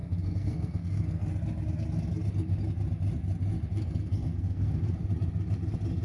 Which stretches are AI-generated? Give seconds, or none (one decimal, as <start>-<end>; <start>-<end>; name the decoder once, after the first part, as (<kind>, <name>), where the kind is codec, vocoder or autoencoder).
0.0-1.3 (codec, SNAC); 3.7-5.0